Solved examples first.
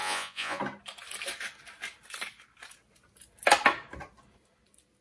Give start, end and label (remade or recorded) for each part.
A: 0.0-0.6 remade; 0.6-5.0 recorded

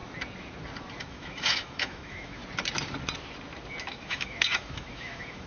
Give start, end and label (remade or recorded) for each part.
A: 0.0-1.0 recorded; 1.0-2.4 remade; 2.4-3.8 recorded; 3.8-5.5 remade

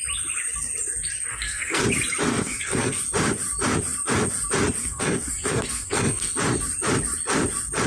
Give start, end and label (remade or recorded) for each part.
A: 0.0-1.3 recorded; 1.3-1.8 remade; 1.8-2.3 recorded; 2.3-3.0 remade; 3.0-4.8 recorded; 4.8-6.3 remade; 6.3-7.9 recorded

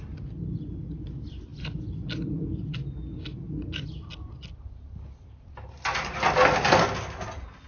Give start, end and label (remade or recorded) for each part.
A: 0.0-7.7 recorded

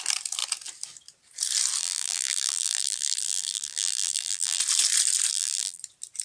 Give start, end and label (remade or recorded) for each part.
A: 0.0-1.8 recorded; 1.8-4.6 remade; 4.6-5.3 recorded; 5.3-5.8 remade; 5.8-6.2 recorded

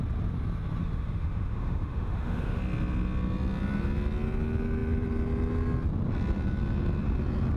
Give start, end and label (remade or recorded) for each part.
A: 0.0-0.8 recorded; 0.8-2.6 remade; 2.6-7.6 recorded

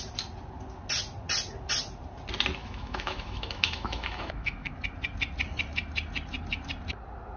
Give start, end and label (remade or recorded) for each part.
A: 0.0-2.6 recorded; 2.6-4.7 remade; 4.7-7.4 recorded

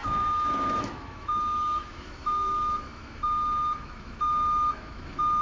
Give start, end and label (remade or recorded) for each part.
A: 0.0-5.4 remade